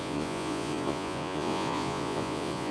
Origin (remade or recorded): remade